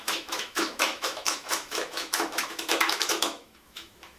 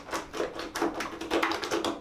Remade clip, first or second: first